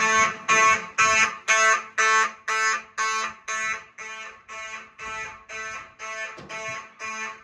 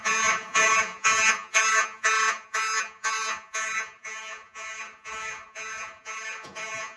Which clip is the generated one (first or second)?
second